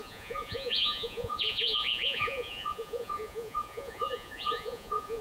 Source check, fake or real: fake